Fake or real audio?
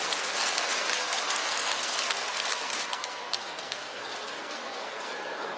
fake